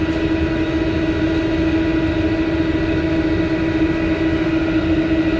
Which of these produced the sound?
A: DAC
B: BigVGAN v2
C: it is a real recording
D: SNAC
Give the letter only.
C